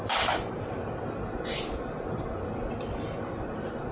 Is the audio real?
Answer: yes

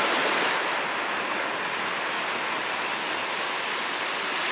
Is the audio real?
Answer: yes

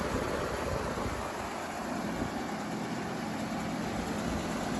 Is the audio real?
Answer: yes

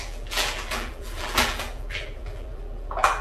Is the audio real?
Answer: no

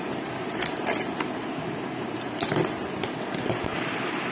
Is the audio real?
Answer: yes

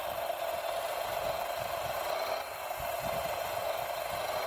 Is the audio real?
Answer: yes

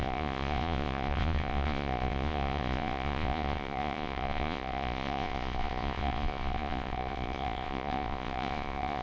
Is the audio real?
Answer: no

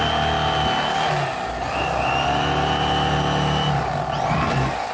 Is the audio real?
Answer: yes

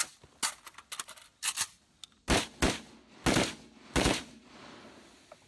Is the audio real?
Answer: yes